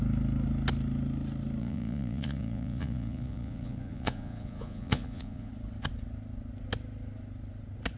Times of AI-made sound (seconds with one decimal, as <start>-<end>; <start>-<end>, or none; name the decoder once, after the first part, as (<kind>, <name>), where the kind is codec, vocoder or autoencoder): 1.6-5.5 (vocoder, Vocos)